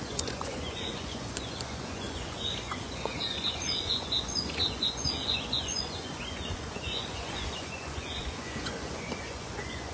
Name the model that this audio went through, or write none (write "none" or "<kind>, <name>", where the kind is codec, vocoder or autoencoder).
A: vocoder, Vocos